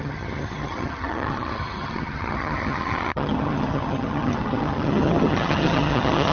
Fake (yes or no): yes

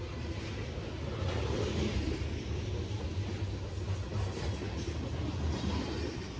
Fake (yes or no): no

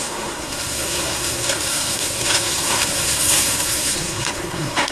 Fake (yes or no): yes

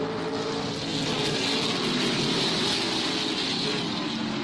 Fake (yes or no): no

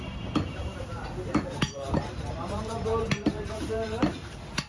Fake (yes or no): yes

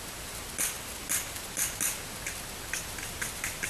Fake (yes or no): no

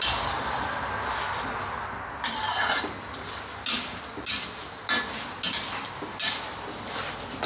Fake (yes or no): no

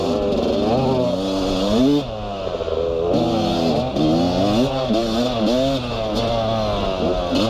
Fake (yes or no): no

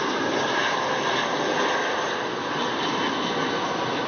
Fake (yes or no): no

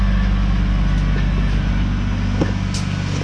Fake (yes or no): no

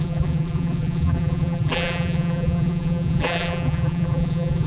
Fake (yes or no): yes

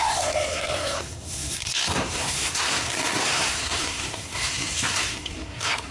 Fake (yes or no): yes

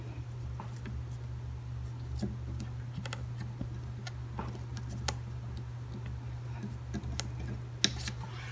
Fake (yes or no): no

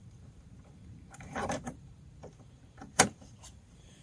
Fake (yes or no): yes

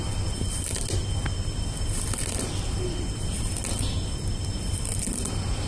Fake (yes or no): no